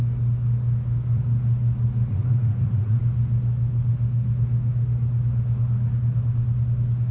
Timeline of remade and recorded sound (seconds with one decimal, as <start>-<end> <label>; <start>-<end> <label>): 0.0-2.1 recorded; 2.1-3.0 remade; 3.0-7.1 recorded